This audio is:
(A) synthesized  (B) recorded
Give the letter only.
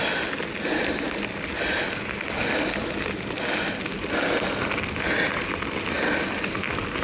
B